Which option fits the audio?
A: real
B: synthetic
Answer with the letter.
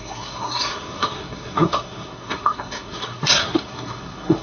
B